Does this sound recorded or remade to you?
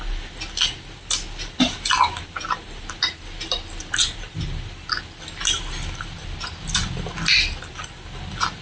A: recorded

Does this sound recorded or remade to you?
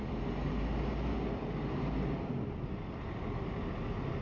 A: recorded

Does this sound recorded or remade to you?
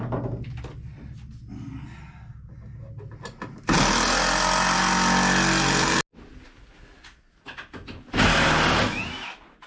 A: recorded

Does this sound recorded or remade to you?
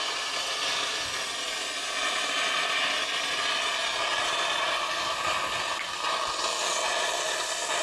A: recorded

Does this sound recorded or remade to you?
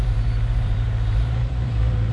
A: remade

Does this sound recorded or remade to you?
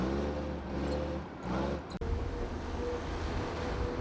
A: recorded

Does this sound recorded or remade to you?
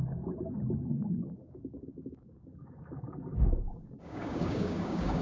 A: remade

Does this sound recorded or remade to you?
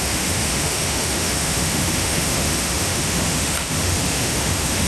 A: remade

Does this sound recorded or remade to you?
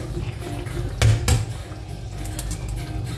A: recorded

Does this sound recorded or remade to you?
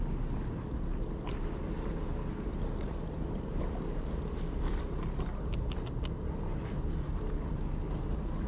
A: recorded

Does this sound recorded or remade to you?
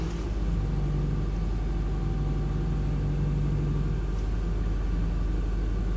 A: recorded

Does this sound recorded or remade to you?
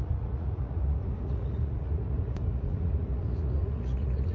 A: remade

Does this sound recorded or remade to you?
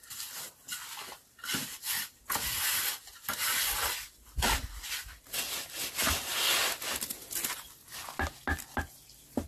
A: recorded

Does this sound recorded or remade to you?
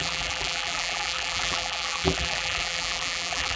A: remade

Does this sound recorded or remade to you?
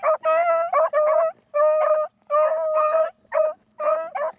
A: recorded